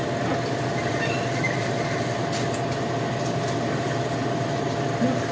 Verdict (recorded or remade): recorded